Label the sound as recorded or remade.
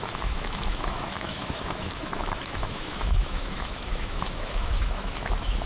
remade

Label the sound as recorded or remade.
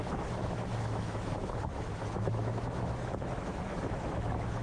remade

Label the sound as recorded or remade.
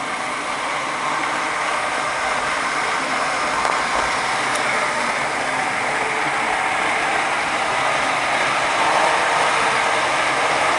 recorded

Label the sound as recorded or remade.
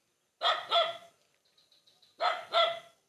recorded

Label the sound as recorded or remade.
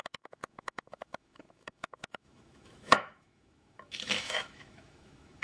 remade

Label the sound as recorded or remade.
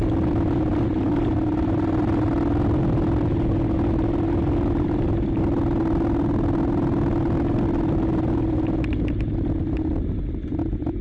recorded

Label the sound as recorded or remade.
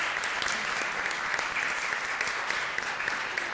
recorded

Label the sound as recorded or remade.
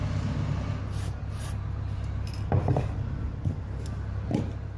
recorded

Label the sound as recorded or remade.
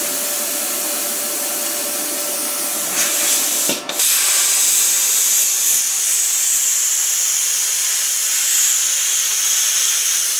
recorded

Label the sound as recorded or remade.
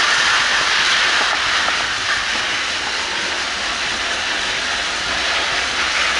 recorded